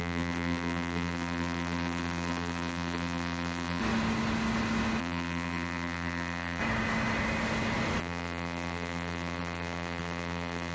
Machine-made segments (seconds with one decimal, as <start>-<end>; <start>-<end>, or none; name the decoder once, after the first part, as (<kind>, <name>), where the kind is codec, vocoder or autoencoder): 0.0-3.8 (vocoder, BigVGAN v2); 5.0-6.6; 8.0-10.7